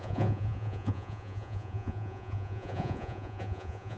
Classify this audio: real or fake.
fake